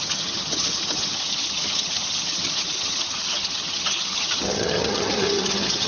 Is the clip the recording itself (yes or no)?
no